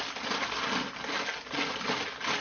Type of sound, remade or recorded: recorded